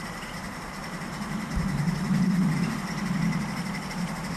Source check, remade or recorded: recorded